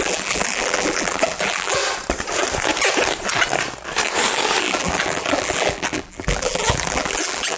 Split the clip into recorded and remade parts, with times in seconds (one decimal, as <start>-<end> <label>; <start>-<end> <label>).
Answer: 0.0-1.8 remade; 1.8-4.6 recorded; 4.6-7.6 remade